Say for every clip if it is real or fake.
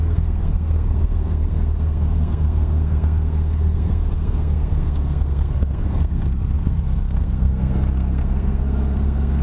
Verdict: fake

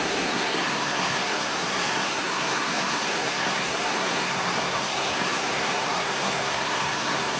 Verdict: fake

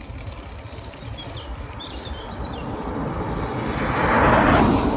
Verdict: real